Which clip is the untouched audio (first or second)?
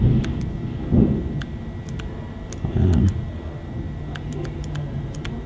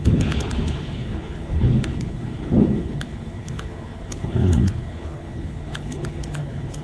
first